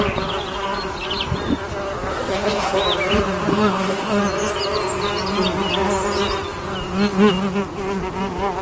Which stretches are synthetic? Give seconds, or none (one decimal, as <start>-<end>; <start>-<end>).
2.1-2.8; 3.5-4.2